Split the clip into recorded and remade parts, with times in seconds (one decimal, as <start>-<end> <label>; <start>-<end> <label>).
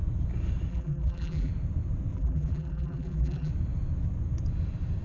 0.0-0.7 recorded; 0.7-1.5 remade; 1.5-2.1 recorded; 2.1-3.5 remade; 3.5-5.0 recorded